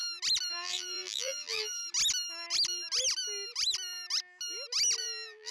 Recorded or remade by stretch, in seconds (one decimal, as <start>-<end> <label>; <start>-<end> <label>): 0.0-0.5 recorded; 0.5-1.8 remade; 1.8-5.0 recorded; 5.0-5.5 remade